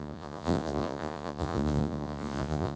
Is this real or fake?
fake